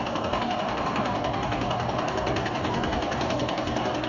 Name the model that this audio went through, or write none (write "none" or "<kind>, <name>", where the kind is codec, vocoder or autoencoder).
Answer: codec, DAC